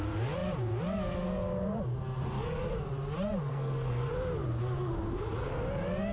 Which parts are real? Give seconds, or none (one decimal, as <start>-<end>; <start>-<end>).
0.0-3.5; 4.1-6.1